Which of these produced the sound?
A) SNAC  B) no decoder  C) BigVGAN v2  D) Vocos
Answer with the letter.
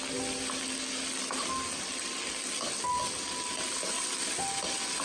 B